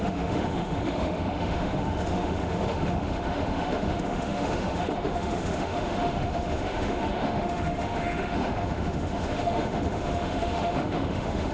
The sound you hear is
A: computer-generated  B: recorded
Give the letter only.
A